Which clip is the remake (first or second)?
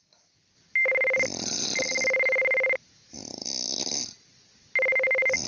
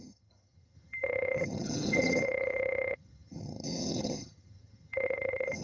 second